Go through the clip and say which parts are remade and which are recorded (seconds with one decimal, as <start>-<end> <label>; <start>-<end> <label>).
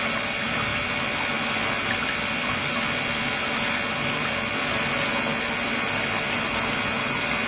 0.0-7.5 recorded